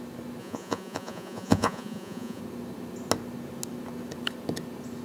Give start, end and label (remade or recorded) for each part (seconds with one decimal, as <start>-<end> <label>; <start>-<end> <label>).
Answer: 0.0-0.4 recorded; 0.4-2.4 remade; 2.4-5.0 recorded